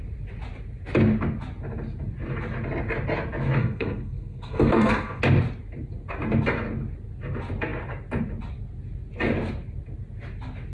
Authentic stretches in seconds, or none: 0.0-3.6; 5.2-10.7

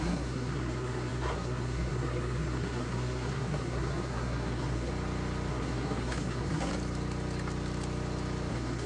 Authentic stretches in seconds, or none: 4.9-5.5; 6.7-8.5

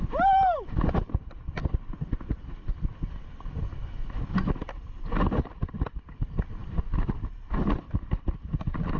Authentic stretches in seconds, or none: 0.0-9.0